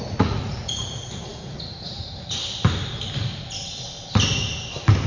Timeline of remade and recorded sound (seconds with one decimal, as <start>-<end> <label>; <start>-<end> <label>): 0.0-2.4 remade; 2.4-5.1 recorded